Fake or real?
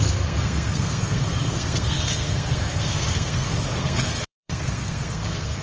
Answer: fake